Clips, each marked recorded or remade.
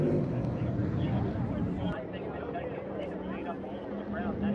recorded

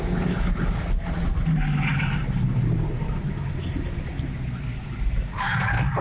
recorded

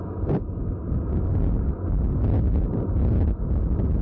recorded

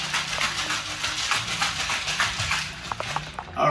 recorded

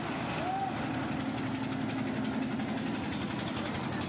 recorded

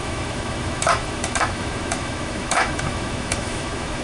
remade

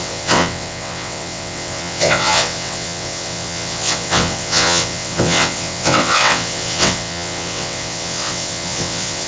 remade